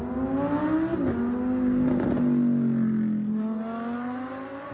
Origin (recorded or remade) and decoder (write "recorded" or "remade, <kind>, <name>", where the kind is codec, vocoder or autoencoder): recorded